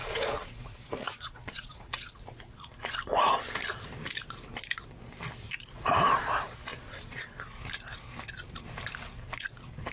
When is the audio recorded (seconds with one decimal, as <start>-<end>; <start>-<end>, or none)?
3.0-6.7; 7.3-9.9